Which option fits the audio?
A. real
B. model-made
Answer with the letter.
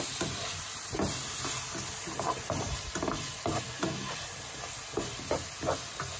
A